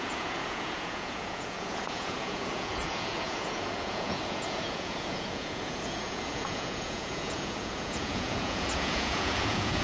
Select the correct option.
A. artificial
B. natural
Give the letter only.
A